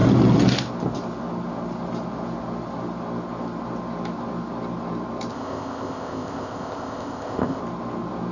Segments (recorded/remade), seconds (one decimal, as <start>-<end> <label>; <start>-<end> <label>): 0.0-5.3 recorded; 5.3-7.6 remade; 7.6-8.3 recorded